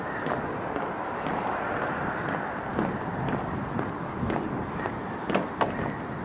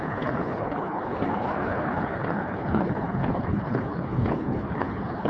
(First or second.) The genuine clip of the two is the first